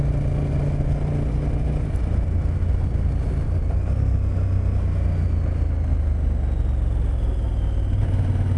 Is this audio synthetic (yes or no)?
no